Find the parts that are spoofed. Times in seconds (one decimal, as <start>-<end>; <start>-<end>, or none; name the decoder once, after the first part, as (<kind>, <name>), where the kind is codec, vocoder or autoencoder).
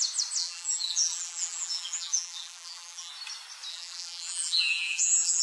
0.4-3.1 (vocoder, BigVGAN v2); 3.7-5.4